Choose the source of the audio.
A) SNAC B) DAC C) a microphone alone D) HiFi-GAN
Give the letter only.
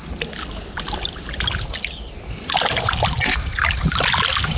C